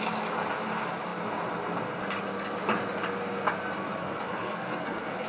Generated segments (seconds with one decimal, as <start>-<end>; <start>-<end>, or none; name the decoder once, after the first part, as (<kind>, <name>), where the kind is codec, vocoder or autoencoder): 4.0-5.3 (codec, SNAC)